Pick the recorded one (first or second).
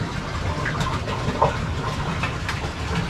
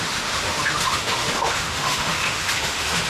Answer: first